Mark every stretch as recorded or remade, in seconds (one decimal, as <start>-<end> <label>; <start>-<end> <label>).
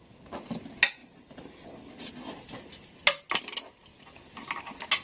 0.0-3.9 recorded; 3.9-4.6 remade; 4.6-5.0 recorded